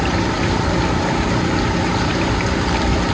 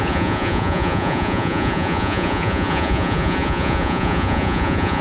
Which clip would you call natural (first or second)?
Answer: first